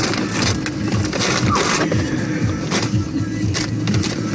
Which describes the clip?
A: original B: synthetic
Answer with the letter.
A